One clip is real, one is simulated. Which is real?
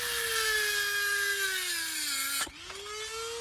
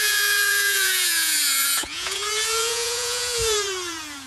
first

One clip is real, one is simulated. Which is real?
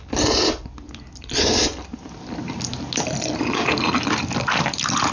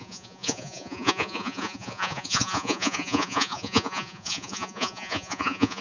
first